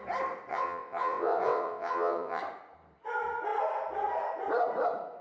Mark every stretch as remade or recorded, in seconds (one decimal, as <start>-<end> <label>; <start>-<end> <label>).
0.0-0.5 recorded; 0.5-2.4 remade; 2.4-5.2 recorded

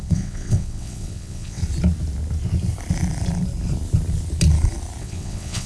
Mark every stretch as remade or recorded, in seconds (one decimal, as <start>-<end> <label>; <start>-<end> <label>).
0.0-1.6 remade; 1.6-5.0 recorded; 5.0-5.7 remade

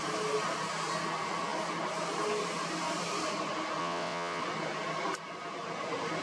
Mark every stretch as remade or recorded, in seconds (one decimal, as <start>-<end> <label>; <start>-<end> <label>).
0.0-3.8 recorded; 3.8-4.4 remade; 4.4-6.2 recorded

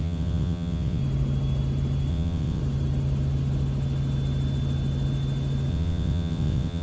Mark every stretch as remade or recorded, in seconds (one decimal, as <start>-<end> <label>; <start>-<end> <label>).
0.0-1.0 remade; 1.0-2.1 recorded; 2.1-2.6 remade; 2.6-5.7 recorded; 5.7-6.8 remade

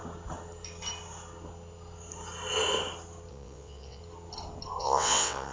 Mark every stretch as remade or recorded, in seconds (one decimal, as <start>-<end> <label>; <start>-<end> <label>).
0.0-3.3 recorded; 3.3-4.0 remade; 4.0-4.8 recorded; 4.8-5.5 remade

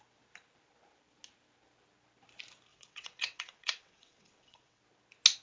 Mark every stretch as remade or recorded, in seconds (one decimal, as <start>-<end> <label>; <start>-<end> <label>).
0.0-2.7 recorded; 2.7-4.8 remade; 4.8-5.4 recorded